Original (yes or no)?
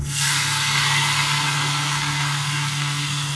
no